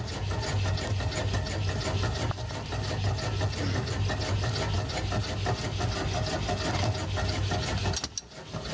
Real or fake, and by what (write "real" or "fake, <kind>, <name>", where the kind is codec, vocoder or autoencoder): real